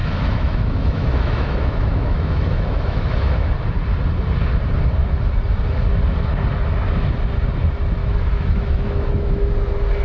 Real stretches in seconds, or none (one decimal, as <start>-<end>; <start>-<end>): 3.5-8.0; 9.5-10.0